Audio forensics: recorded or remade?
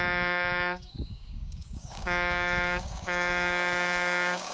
remade